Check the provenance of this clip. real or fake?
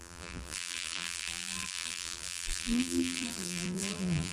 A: fake